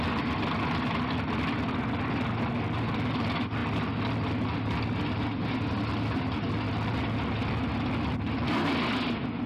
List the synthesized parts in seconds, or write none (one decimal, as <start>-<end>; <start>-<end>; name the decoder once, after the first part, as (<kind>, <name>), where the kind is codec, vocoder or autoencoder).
none

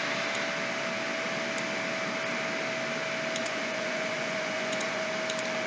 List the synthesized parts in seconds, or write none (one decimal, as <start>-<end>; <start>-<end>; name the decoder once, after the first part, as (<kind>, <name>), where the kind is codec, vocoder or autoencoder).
3.4-5.1 (vocoder, Vocos)

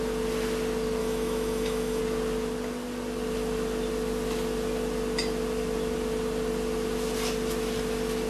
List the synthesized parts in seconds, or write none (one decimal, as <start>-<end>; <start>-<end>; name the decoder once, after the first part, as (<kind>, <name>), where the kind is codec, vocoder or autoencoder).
1.0-2.0 (autoencoder, DAC-VAE)

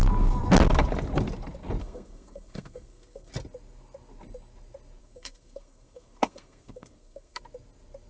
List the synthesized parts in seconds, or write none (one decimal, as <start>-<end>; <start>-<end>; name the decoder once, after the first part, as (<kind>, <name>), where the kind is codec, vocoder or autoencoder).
1.8-3.3 (codec, SNAC); 5.0-7.4